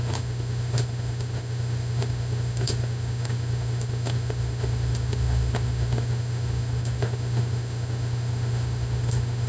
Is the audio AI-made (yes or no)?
yes